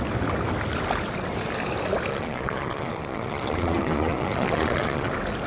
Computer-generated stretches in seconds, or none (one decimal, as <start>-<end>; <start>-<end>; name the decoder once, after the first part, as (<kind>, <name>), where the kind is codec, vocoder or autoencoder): 2.1-5.1 (vocoder, Vocos)